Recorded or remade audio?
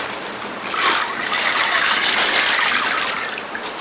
recorded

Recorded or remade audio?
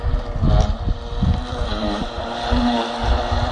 recorded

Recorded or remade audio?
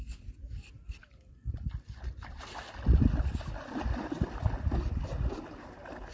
recorded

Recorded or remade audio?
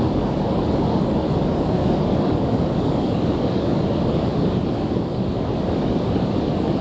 remade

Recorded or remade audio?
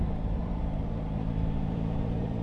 remade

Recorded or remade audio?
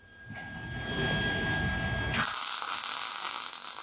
recorded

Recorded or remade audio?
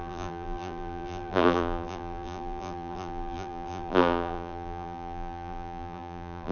remade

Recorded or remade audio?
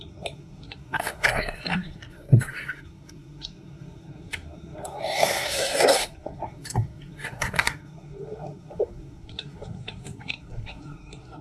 remade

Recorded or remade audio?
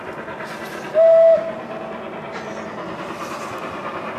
recorded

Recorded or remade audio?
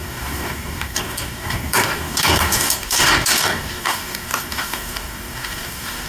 remade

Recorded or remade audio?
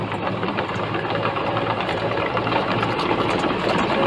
remade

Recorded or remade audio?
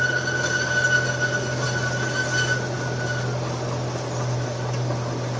recorded